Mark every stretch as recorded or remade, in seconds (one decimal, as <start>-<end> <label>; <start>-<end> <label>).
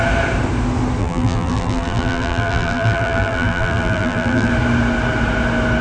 0.0-1.0 recorded; 1.0-4.5 remade; 4.5-5.8 recorded